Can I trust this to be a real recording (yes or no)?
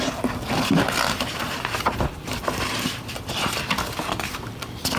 yes